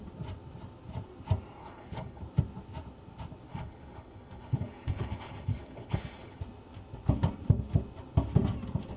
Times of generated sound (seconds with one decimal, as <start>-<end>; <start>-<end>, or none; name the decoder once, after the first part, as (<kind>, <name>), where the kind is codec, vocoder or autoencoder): 1.6-2.2 (codec, HILCodec); 3.5-6.4